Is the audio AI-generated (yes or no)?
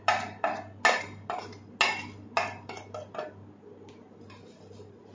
no